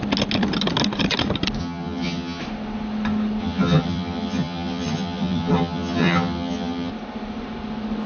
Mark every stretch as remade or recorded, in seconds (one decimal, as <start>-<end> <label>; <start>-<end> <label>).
0.0-1.6 recorded; 1.6-2.4 remade; 2.4-3.4 recorded; 3.4-6.9 remade; 6.9-8.1 recorded